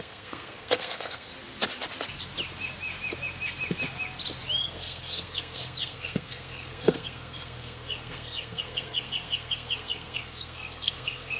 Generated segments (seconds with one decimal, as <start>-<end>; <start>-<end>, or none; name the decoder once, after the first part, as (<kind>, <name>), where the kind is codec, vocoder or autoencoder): 0.0-1.3 (codec, SNAC); 4.6-11.4